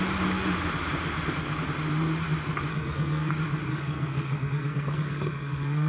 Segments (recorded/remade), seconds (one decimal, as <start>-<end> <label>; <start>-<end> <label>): 0.0-2.7 recorded; 2.7-3.3 remade; 3.3-3.7 recorded; 3.7-5.9 remade